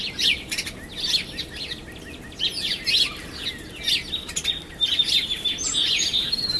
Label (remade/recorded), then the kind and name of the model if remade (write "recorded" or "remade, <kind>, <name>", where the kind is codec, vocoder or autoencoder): recorded